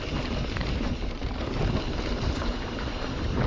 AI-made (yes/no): yes